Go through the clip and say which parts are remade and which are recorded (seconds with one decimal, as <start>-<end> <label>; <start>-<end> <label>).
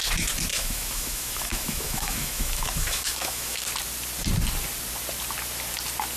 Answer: 0.0-0.5 recorded; 0.5-3.6 remade; 3.6-6.2 recorded